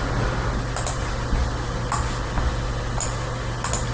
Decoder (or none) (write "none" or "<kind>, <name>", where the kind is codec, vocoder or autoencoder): none